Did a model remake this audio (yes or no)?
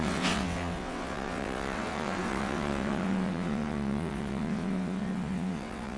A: yes